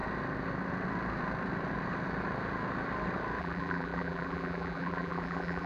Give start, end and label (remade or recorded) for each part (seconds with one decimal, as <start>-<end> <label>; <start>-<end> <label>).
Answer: 0.0-3.4 recorded; 3.4-5.7 remade